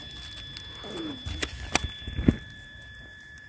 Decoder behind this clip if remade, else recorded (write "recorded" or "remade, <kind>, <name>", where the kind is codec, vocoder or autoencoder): recorded